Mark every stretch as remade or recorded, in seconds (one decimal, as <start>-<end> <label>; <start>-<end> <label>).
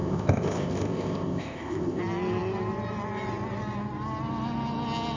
0.0-2.0 remade; 2.0-5.2 recorded